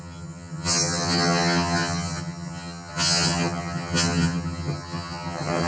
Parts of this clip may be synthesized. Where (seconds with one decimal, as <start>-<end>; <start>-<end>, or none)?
0.0-5.7